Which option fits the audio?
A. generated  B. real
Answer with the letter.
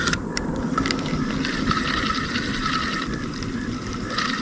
A